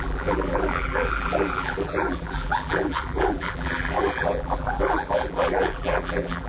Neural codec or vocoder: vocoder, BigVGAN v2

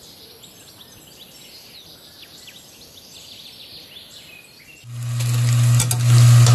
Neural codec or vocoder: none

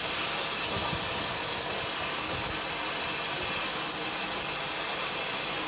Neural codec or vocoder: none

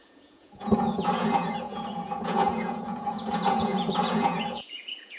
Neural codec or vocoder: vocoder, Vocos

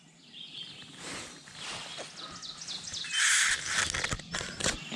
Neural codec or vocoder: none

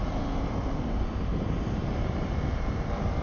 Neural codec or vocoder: vocoder, BigVGAN v2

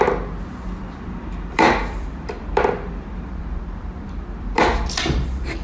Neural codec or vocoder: vocoder, BigVGAN v2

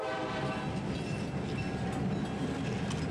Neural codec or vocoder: none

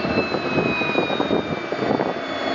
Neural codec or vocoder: none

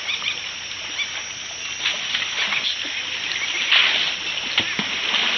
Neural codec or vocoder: none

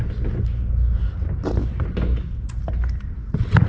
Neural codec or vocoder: none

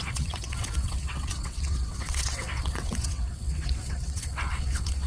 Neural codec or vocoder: vocoder, WaveNeXt